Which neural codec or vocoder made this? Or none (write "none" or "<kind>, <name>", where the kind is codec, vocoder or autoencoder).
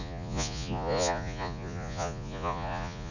vocoder, Vocos